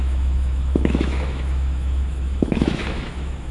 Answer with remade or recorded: remade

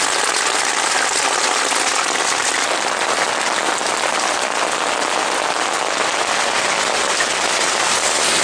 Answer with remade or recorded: recorded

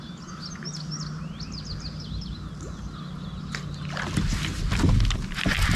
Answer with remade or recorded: recorded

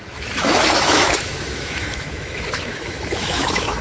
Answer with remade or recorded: remade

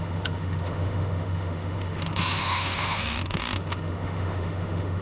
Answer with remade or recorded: remade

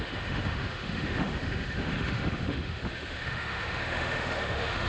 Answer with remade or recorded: remade